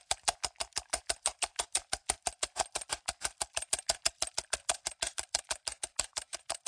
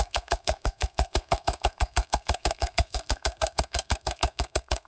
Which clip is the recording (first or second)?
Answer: first